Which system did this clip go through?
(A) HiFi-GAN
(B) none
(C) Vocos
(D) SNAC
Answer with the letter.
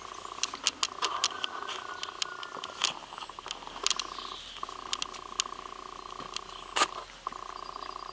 B